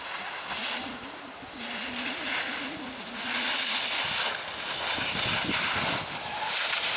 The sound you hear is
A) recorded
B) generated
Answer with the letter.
A